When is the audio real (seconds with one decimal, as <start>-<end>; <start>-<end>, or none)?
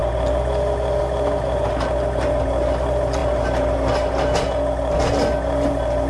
0.0-6.1